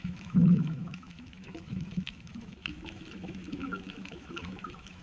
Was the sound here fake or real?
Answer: fake